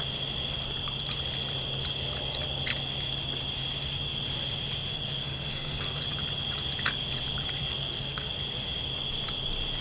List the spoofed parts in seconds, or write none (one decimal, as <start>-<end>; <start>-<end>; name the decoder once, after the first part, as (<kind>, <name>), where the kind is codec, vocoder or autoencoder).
4.9-6.0 (codec, SNAC); 7.6-8.3

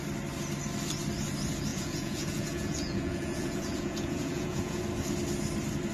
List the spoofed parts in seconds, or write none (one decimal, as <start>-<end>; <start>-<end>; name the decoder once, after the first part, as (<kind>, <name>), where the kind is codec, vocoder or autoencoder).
1.7-4.8 (vocoder, Vocos)

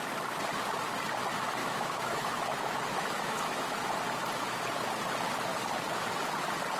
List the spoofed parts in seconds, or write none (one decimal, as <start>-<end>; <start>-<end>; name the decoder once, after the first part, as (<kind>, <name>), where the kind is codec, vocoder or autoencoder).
1.6-3.9 (autoencoder, DAC-VAE)

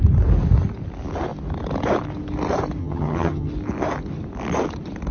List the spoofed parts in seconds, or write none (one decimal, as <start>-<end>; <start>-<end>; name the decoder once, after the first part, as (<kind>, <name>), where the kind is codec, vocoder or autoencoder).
2.8-3.5 (vocoder, HiFi-GAN)

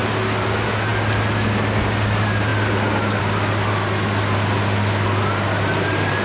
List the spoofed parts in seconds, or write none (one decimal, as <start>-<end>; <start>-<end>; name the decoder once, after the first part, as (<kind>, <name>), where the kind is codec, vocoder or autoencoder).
none

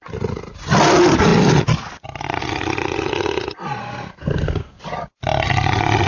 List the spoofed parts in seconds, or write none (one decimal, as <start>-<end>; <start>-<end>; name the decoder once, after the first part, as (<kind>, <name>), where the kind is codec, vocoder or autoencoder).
3.8-4.8 (codec, SNAC)